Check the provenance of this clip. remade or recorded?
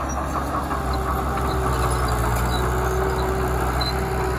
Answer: recorded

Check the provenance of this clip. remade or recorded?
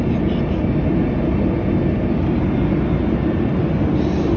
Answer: recorded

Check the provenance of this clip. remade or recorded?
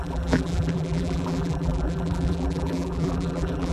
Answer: remade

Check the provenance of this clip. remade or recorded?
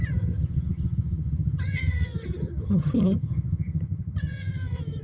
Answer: remade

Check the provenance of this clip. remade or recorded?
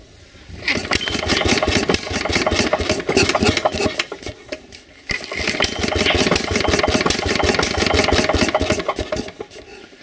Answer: recorded